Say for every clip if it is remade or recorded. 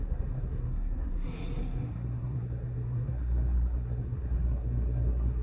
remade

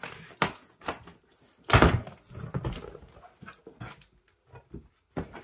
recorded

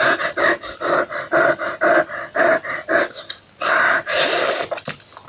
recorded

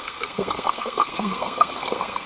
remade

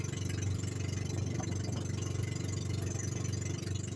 recorded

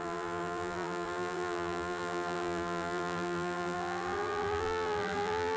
remade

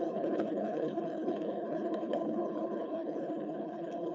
remade